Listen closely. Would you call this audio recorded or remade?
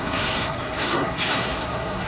remade